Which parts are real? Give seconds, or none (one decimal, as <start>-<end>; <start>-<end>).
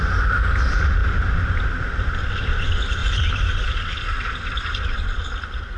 none